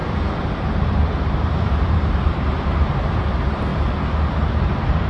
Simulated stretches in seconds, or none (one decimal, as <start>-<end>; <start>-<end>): 0.0-3.7; 4.6-5.1